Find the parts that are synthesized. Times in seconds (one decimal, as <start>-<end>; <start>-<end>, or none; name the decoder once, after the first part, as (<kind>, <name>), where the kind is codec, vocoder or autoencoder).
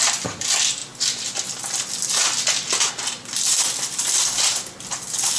none